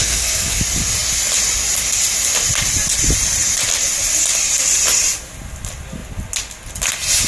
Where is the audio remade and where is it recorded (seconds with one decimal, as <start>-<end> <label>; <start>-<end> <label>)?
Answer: 0.0-0.6 remade; 0.6-7.3 recorded